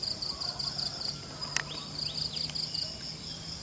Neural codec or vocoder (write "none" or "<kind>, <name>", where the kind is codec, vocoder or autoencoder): none